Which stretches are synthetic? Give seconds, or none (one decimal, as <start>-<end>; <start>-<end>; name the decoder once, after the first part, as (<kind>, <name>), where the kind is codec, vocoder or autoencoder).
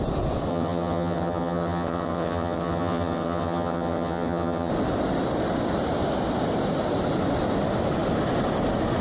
0.5-4.7 (vocoder, HiFi-GAN)